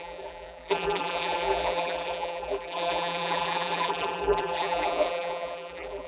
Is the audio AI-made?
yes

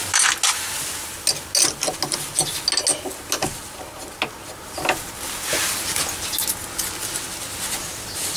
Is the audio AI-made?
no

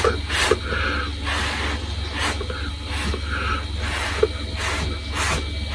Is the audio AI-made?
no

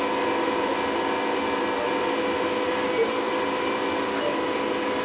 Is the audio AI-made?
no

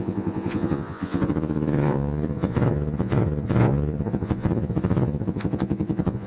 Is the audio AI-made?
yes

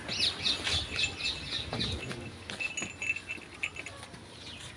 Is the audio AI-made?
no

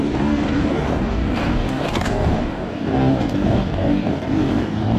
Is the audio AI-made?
yes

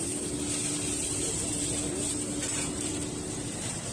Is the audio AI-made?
no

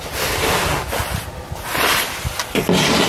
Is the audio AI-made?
no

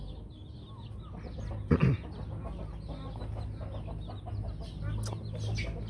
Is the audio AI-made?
no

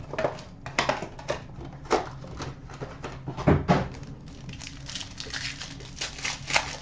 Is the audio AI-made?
no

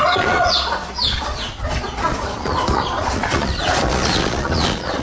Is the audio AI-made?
yes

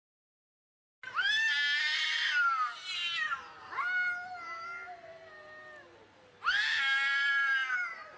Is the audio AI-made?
no